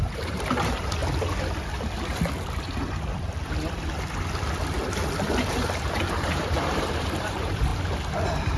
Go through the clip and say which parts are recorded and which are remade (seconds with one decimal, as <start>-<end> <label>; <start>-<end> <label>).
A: 0.0-1.0 remade; 1.0-5.5 recorded; 5.5-7.7 remade; 7.7-8.6 recorded